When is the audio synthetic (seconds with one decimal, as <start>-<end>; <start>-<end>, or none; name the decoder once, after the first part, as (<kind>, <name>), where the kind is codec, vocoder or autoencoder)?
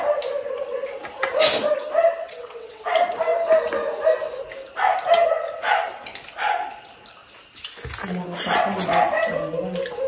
2.2-2.8 (vocoder, WaveNeXt)